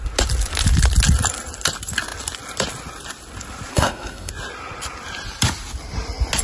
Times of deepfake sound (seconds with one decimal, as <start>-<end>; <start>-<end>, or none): 3.7-4.3